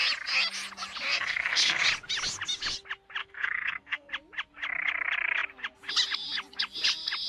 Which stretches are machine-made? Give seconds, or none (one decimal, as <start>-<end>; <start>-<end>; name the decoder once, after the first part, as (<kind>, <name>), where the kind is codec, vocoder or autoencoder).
1.1-1.8 (codec, SNAC); 3.2-4.1